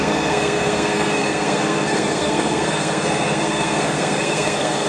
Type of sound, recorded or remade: remade